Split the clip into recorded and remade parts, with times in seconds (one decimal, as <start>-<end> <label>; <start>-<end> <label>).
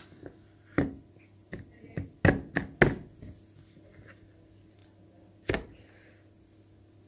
0.0-7.1 recorded